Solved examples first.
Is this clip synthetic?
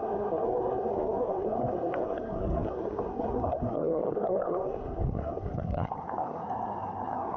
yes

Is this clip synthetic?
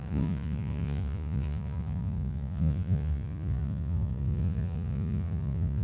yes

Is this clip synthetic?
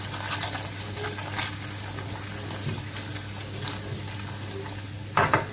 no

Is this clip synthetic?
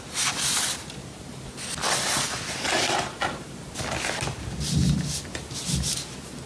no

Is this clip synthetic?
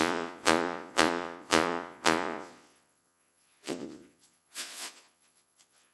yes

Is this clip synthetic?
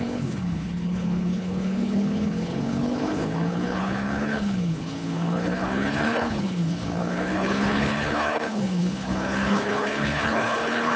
yes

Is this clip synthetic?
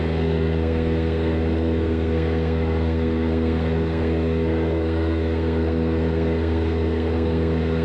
yes